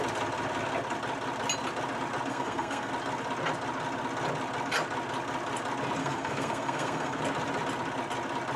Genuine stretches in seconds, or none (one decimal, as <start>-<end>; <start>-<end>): 0.0-2.3; 2.9-6.0; 7.2-8.6